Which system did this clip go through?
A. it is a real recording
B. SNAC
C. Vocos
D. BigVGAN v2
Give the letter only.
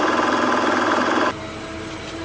A